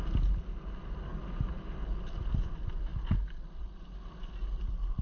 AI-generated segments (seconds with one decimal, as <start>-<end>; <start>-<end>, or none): none

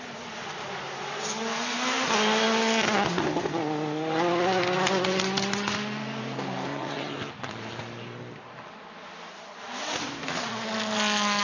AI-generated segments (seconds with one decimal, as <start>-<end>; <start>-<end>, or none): 6.7-7.2